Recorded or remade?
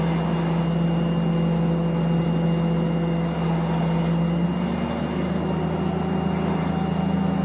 recorded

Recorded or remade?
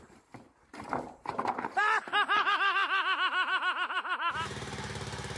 remade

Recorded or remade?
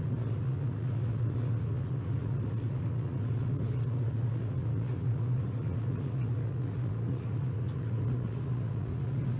remade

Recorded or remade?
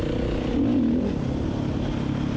recorded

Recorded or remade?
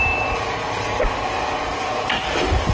recorded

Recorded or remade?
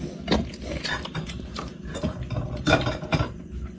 recorded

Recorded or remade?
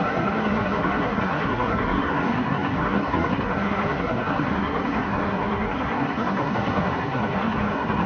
remade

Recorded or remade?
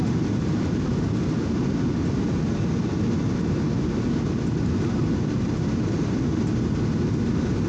recorded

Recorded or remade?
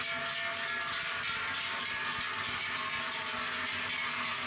recorded